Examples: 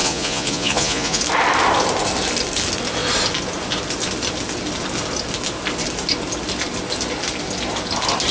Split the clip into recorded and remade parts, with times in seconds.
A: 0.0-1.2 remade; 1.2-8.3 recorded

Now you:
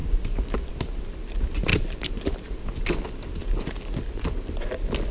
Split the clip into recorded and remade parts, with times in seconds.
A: 0.0-5.1 recorded

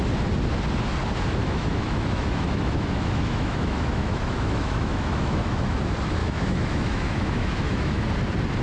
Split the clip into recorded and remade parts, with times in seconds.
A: 0.0-1.4 recorded; 1.4-5.8 remade; 5.8-6.2 recorded; 6.2-8.1 remade; 8.1-8.6 recorded

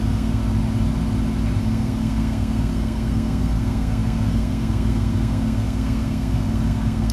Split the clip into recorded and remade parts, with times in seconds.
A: 0.0-0.4 remade; 0.4-1.6 recorded; 1.6-7.1 remade

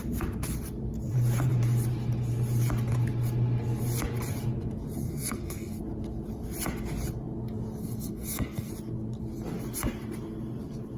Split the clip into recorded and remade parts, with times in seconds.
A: 0.0-5.0 recorded; 5.0-5.8 remade; 5.8-7.8 recorded; 7.8-8.7 remade; 8.7-11.0 recorded

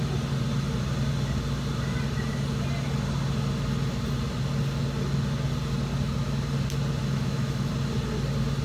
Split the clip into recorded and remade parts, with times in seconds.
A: 0.0-7.0 recorded; 7.0-7.7 remade; 7.7-8.6 recorded

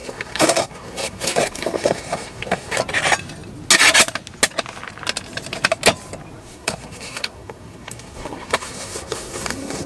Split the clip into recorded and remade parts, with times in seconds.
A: 0.0-2.8 remade; 2.8-6.4 recorded; 6.4-9.9 remade